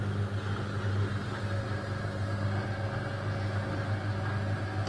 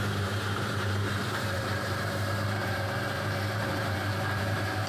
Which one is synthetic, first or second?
second